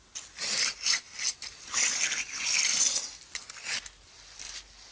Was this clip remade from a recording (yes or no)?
no